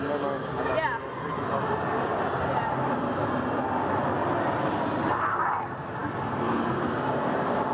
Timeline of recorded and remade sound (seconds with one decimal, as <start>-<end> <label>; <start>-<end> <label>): 0.0-7.7 recorded

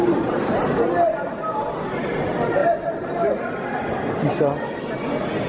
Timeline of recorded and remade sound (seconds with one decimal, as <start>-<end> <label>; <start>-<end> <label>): 0.0-5.5 recorded

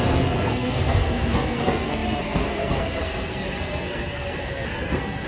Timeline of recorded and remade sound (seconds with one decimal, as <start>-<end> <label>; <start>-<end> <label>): 0.0-5.3 remade

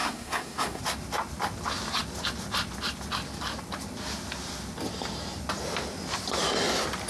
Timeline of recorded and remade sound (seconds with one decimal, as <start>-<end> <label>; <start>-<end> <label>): 0.0-0.8 remade; 0.8-7.1 recorded

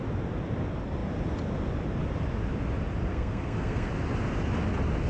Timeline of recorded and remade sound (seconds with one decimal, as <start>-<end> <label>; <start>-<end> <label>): 0.0-3.1 recorded; 3.1-3.9 remade; 3.9-5.1 recorded

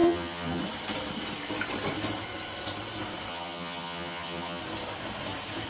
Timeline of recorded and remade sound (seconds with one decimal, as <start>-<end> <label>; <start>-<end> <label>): 0.0-0.6 remade; 0.6-3.3 recorded; 3.3-4.6 remade; 4.6-5.7 recorded

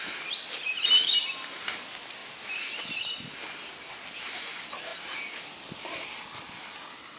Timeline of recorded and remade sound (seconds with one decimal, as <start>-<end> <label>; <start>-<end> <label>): 0.0-7.2 recorded